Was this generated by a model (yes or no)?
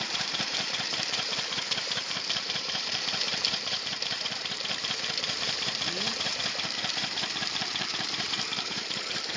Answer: yes